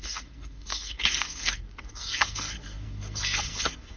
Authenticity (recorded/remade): remade